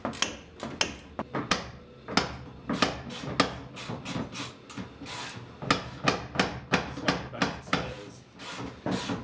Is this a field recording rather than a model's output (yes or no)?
yes